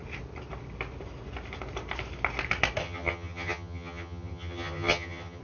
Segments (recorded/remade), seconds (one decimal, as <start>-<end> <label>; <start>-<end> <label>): 0.0-2.8 recorded; 2.8-5.4 remade